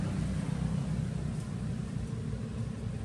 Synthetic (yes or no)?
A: yes